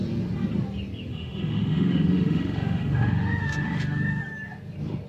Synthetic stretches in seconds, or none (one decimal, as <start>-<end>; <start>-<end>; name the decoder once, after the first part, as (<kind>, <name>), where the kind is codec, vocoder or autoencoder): 1.1-4.2 (autoencoder, DAC-VAE)